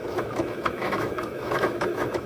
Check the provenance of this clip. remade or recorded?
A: remade